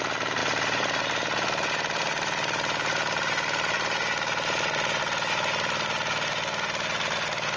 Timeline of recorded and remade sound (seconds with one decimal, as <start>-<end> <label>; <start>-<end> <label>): 0.0-7.6 recorded